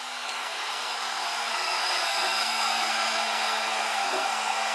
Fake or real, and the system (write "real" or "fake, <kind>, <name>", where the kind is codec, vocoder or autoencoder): fake, codec, SNAC